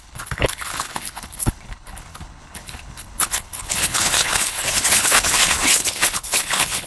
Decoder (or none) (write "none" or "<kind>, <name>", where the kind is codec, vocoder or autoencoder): codec, HILCodec